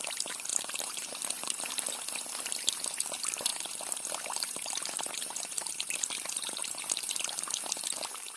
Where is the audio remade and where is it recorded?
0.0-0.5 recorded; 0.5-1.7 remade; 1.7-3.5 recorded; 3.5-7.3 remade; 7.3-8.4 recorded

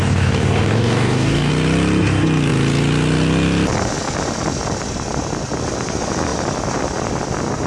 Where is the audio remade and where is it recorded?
0.0-1.5 remade; 1.5-7.7 recorded

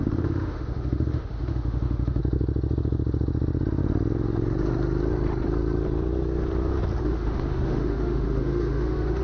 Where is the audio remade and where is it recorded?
0.0-2.2 remade; 2.2-7.0 recorded; 7.0-9.2 remade

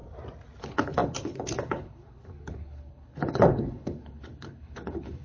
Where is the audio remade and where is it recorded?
0.0-0.6 recorded; 0.6-5.2 remade